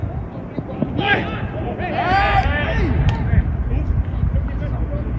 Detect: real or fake real